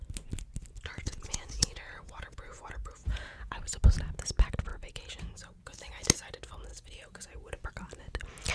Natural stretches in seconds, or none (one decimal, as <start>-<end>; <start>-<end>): 0.0-1.0; 3.6-4.7; 5.8-6.7; 7.6-8.5